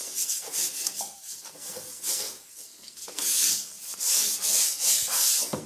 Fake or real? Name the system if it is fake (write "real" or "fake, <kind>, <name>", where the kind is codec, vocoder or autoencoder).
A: fake, codec, SNAC